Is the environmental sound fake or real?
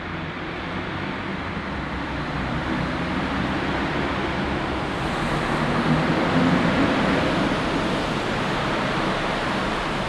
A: real